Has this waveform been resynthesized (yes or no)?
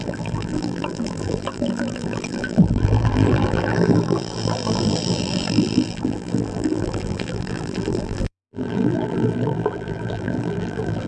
yes